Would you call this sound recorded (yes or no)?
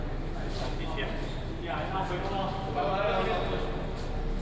yes